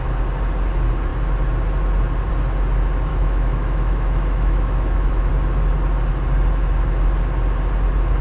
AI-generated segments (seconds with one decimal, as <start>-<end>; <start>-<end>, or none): 3.1-5.3